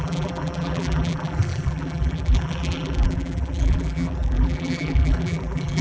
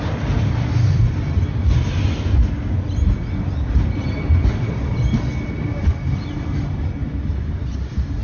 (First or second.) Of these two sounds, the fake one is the first